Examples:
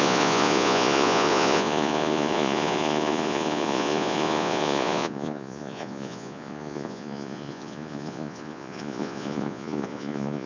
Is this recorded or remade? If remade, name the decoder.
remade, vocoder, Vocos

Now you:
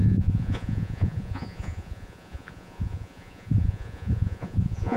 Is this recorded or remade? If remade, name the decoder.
remade, vocoder, Vocos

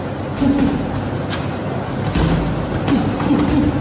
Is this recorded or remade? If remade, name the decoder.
recorded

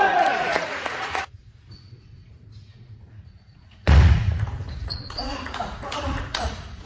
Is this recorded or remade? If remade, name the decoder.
remade, vocoder, Vocos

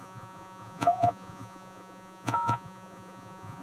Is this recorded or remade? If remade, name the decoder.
remade, vocoder, Vocos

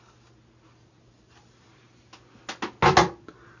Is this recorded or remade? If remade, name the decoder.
recorded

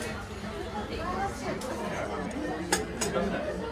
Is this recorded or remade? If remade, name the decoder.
recorded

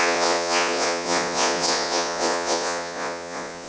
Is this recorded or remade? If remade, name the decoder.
remade, vocoder, Vocos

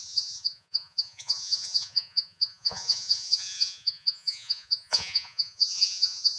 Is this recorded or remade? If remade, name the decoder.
remade, vocoder, Vocos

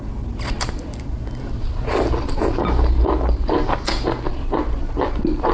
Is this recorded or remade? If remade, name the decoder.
recorded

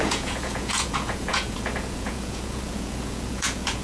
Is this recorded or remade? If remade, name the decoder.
remade, vocoder, Vocos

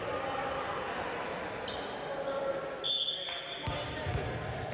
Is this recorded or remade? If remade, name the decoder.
recorded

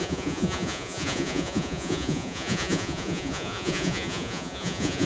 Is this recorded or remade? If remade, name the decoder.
remade, vocoder, Vocos